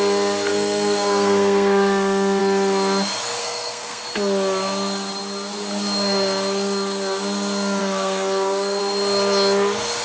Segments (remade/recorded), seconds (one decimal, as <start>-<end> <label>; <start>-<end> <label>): 0.0-0.5 recorded; 0.5-2.4 remade; 2.4-3.4 recorded; 3.4-4.0 remade; 4.0-7.8 recorded; 7.8-8.8 remade; 8.8-10.0 recorded